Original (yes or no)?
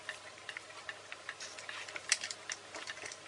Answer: yes